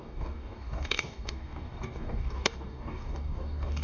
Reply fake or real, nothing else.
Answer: fake